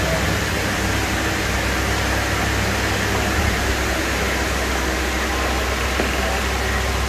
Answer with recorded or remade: recorded